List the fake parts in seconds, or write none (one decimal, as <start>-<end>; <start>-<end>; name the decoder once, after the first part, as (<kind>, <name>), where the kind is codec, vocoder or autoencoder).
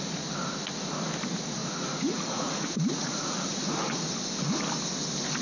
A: 1.6-3.6 (vocoder, Vocos)